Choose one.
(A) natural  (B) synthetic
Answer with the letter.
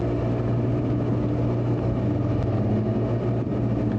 A